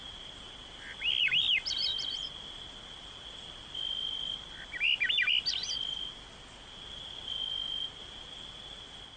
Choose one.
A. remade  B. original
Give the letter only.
B